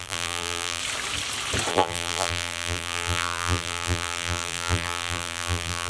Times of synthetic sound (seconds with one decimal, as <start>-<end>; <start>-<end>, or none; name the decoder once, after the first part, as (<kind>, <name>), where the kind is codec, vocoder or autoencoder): 0.0-0.8 (vocoder, BigVGAN v2); 1.7-5.9